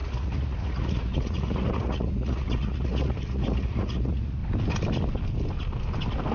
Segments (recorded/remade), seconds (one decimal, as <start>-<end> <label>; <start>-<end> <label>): 0.0-4.4 remade; 4.4-6.3 recorded